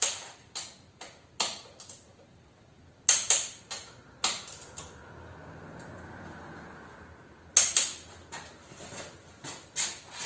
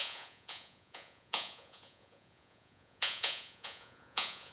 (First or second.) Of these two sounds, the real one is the first